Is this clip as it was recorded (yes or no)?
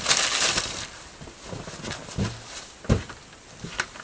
yes